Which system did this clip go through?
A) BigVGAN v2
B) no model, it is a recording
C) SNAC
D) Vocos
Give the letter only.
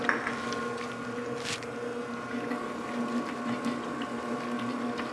B